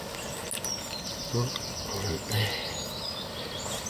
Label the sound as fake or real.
real